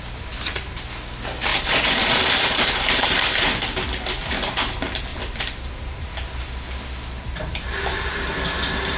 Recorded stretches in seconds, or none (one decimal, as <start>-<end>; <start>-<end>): 0.0-1.5; 3.5-5.1; 6.1-7.5; 8.3-9.0